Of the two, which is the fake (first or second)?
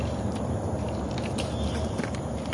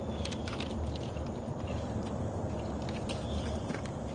first